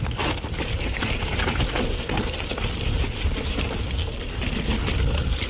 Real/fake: real